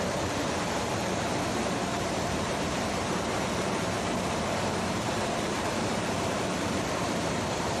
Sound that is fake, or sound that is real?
fake